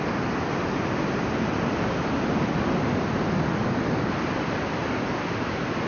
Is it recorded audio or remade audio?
remade